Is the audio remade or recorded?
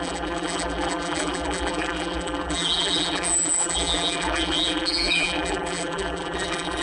remade